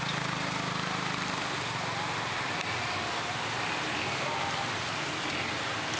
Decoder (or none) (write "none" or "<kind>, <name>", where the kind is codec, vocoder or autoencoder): none